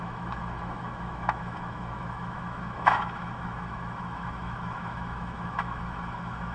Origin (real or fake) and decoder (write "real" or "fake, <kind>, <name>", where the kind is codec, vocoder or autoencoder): fake, autoencoder, DAC-VAE